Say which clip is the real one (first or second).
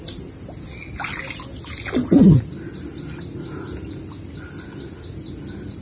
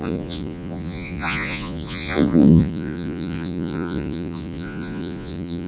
first